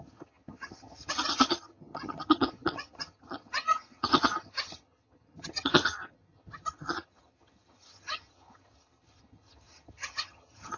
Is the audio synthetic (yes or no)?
yes